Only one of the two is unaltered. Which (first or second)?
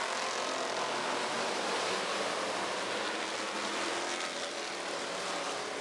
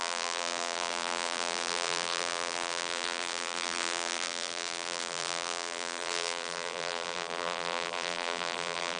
first